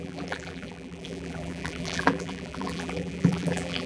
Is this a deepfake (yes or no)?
yes